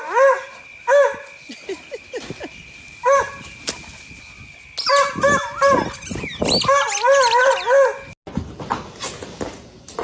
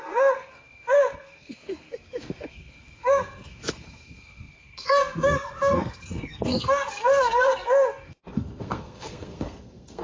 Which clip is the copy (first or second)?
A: second